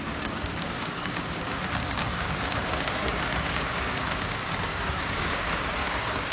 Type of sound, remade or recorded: remade